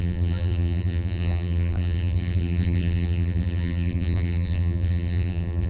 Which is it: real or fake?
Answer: fake